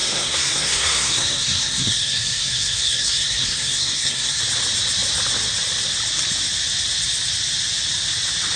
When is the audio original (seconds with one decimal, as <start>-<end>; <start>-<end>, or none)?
4.4-8.6